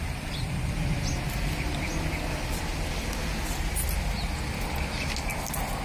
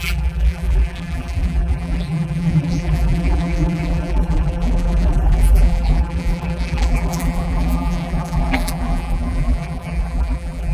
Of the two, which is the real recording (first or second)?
first